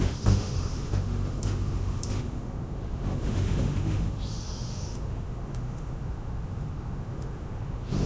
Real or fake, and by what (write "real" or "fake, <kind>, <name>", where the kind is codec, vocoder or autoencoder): fake, autoencoder, DAC-VAE